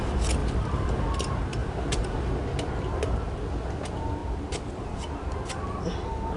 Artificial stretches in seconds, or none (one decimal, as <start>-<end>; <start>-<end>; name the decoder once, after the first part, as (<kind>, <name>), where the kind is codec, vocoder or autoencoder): 0.4-1.0 (vocoder, BigVGAN v2); 1.6-2.3